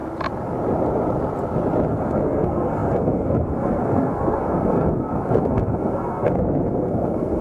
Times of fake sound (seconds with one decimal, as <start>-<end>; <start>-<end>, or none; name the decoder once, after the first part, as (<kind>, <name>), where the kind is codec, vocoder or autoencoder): 1.9-7.4 (codec, SNAC)